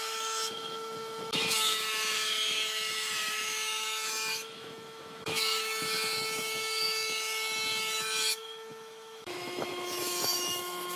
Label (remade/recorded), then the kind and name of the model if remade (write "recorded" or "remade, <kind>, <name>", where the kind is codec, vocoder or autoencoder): remade, autoencoder, DAC-VAE